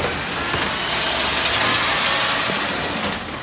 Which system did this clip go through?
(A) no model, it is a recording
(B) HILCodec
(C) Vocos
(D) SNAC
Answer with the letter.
A